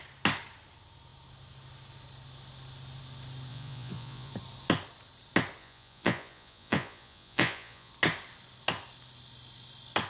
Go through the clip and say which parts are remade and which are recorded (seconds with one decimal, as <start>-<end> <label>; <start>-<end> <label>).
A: 0.0-3.5 recorded; 3.5-4.3 remade; 4.3-5.6 recorded; 5.6-7.9 remade; 7.9-10.1 recorded